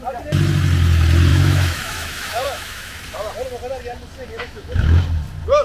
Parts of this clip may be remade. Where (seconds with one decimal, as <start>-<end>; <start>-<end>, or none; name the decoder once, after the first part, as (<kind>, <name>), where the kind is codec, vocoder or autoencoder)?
1.3-3.0 (autoencoder, DAC-VAE); 4.3-4.8